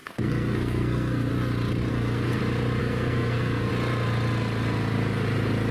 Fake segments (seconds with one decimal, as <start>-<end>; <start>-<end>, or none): 0.0-1.3; 1.9-2.4; 2.8-3.7